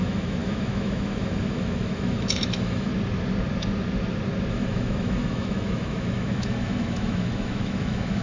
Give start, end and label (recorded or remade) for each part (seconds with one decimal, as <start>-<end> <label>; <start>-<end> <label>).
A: 0.0-2.9 remade; 2.9-4.5 recorded; 4.5-8.2 remade